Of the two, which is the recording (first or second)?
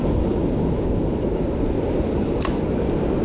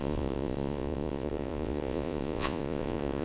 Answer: first